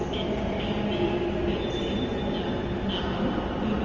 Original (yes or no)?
yes